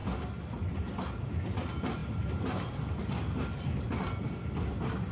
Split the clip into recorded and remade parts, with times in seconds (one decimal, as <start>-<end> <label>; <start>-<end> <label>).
0.0-5.1 recorded